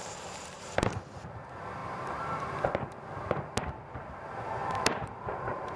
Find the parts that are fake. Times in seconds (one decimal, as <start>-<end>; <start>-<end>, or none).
0.0-1.0; 4.6-5.2